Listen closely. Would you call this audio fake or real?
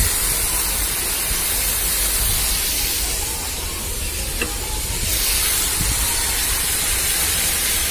real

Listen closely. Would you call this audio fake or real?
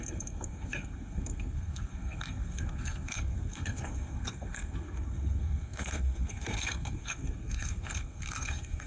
fake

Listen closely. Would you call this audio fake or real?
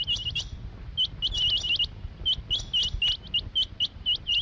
real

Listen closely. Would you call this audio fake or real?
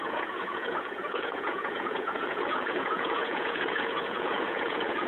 fake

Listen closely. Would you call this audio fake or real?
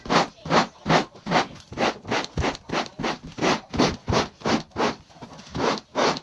real